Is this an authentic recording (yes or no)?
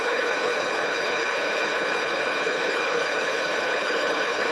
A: no